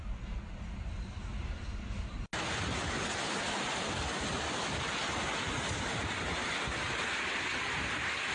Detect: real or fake real